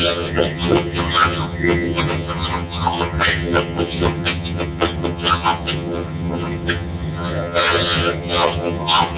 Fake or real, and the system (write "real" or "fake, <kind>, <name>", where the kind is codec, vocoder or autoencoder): fake, vocoder, HiFi-GAN